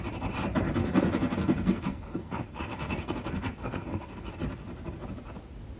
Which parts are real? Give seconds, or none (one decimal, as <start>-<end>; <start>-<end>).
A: 0.0-0.8; 4.3-5.8

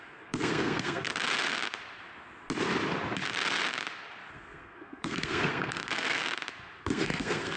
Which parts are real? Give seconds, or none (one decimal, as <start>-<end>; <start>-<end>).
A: 1.1-4.3; 6.2-6.8

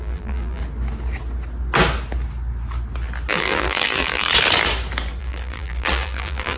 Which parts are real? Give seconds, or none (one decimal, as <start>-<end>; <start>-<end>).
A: 0.6-3.3; 4.3-5.2

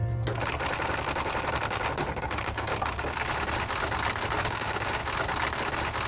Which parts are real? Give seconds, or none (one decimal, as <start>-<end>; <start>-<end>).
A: 0.0-2.2; 2.7-4.4; 5.0-6.1

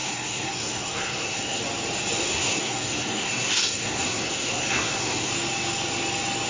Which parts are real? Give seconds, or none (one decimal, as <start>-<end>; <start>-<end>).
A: 1.6-2.2; 5.3-6.5

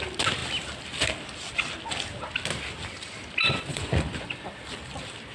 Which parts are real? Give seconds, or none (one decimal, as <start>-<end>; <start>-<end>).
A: 0.0-3.7; 4.3-5.3

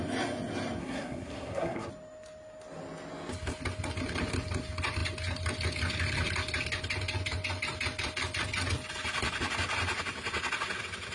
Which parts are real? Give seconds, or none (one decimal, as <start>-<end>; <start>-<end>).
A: 0.0-0.8; 1.9-11.1

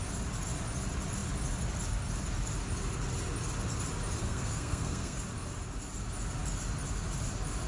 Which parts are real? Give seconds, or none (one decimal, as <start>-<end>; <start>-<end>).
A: 0.0-4.2; 5.2-7.7